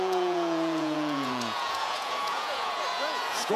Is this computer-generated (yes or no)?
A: yes